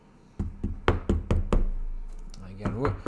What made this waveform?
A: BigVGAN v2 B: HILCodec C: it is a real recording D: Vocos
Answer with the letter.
C